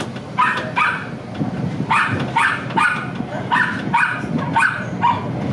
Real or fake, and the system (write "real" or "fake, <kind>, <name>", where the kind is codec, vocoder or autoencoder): real